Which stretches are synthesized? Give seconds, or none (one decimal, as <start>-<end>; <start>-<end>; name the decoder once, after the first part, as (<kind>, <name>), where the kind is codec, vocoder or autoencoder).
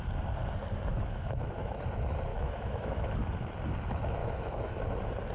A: 0.9-1.8 (autoencoder, DAC-VAE); 2.3-3.1; 4.2-4.8